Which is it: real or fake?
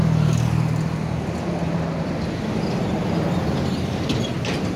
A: real